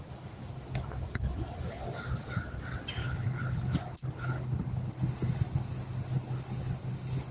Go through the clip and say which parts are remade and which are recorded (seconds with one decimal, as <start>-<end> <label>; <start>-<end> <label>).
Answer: 0.0-3.0 recorded; 3.0-7.3 remade